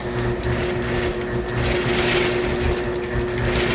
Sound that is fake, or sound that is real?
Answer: real